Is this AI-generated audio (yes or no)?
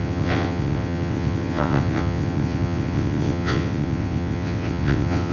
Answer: yes